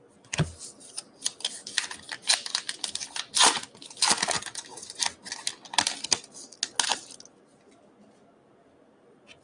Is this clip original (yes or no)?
yes